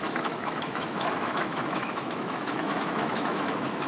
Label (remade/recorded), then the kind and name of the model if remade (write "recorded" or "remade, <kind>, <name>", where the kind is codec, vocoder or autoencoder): remade, autoencoder, DAC-VAE